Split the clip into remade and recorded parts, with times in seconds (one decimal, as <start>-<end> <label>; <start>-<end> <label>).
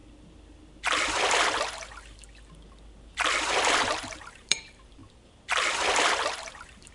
0.0-3.9 recorded; 3.9-5.0 remade; 5.0-6.5 recorded; 6.5-6.9 remade